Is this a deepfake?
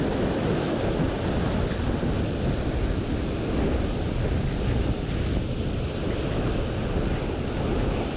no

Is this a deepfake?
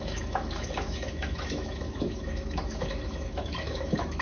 yes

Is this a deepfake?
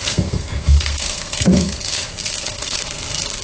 yes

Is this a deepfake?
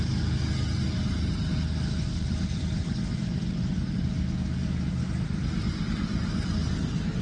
no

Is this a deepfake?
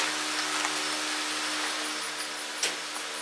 no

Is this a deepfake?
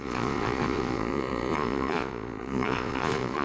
yes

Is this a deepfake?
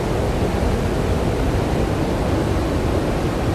no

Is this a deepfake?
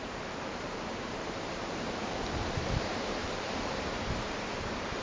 yes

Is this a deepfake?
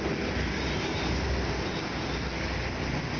no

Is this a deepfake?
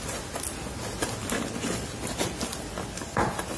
no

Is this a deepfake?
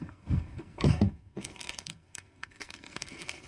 yes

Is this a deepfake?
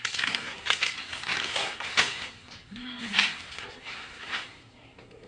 yes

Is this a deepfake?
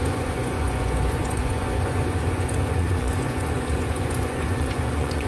yes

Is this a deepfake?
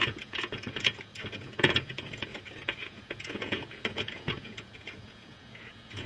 yes